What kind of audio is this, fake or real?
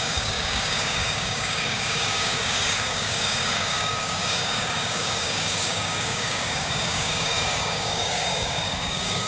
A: fake